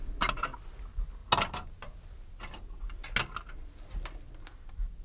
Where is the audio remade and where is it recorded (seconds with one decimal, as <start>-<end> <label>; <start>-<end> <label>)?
0.0-5.0 recorded

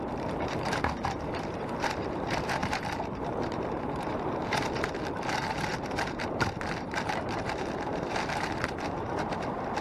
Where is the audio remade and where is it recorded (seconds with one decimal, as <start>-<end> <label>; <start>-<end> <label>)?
0.0-9.8 remade

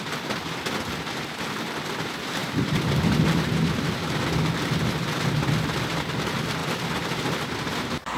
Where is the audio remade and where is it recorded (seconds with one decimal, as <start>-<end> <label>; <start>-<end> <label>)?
0.0-2.4 recorded; 2.4-3.2 remade; 3.2-8.2 recorded

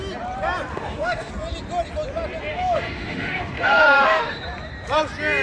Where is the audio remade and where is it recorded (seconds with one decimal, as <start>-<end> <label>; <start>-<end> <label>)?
0.0-0.7 recorded; 0.7-1.3 remade; 1.3-2.5 recorded; 2.5-4.4 remade; 4.4-5.4 recorded

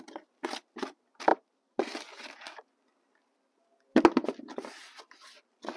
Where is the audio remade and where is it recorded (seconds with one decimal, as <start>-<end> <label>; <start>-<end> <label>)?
0.0-5.8 recorded